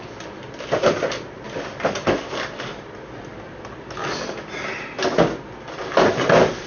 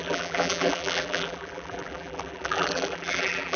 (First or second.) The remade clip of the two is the second